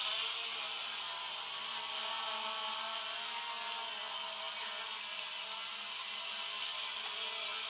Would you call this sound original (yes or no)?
yes